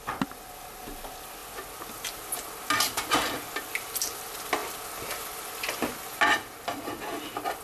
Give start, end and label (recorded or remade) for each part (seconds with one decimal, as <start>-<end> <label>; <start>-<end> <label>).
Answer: 0.0-7.6 recorded